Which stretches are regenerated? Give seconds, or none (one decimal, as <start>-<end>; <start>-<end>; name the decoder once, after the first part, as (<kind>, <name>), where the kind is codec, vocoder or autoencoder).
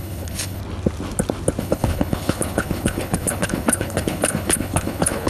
0.0-0.6 (codec, HILCodec); 1.6-5.3